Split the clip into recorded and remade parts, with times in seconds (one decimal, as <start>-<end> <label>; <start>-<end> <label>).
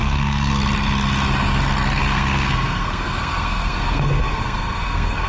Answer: 0.0-0.6 remade; 0.6-2.0 recorded; 2.0-5.3 remade